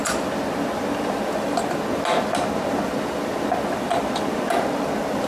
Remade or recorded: recorded